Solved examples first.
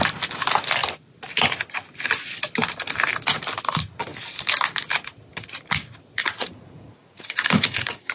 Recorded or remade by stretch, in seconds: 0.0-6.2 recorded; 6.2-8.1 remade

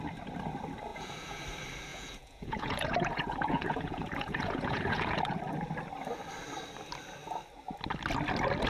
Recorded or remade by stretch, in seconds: 0.0-0.9 recorded; 0.9-1.4 remade; 1.4-1.9 recorded; 1.9-5.4 remade; 5.4-8.7 recorded

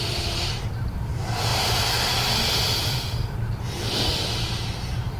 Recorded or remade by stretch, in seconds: 0.0-5.2 remade

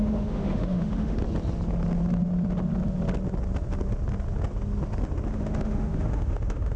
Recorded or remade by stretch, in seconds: 0.0-1.2 remade; 1.2-5.3 recorded; 5.3-6.8 remade

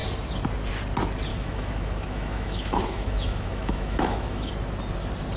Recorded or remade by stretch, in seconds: 0.0-1.3 recorded; 1.3-4.5 remade; 4.5-5.4 recorded

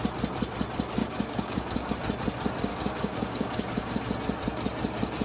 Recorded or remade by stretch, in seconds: 0.0-1.0 recorded; 1.0-1.9 remade; 1.9-2.7 recorded; 2.7-4.0 remade; 4.0-5.2 recorded

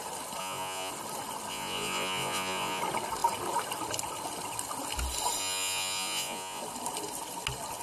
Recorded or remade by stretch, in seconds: 0.0-0.4 recorded; 0.4-0.9 remade; 0.9-1.5 recorded; 1.5-2.8 remade; 2.8-5.4 recorded; 5.4-6.6 remade; 6.6-7.8 recorded

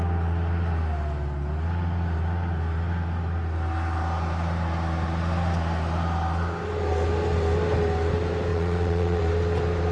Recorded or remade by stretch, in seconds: 0.0-8.5 recorded; 8.5-9.2 remade; 9.2-9.9 recorded